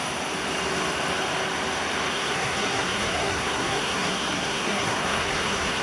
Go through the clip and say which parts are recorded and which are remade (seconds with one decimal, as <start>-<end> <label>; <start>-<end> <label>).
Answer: 0.0-2.1 recorded; 2.1-5.8 remade